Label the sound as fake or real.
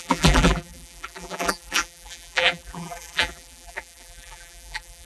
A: fake